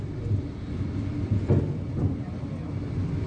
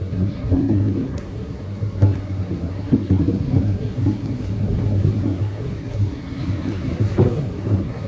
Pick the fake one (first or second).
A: second